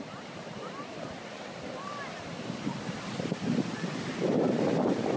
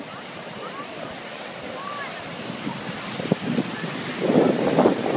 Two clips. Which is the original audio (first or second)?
second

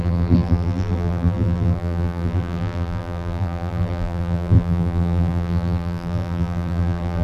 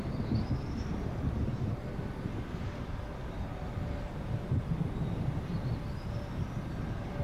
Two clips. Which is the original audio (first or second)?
second